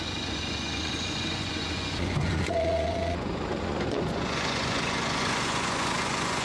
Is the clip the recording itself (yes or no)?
no